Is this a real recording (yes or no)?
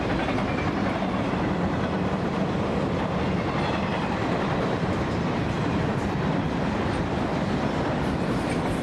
no